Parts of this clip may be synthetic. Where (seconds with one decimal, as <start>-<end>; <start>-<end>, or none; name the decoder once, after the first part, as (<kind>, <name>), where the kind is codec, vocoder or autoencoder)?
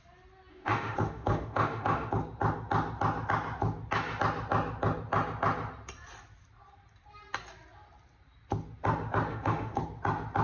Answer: 0.5-2.1 (autoencoder, DAC-VAE); 9.3-9.8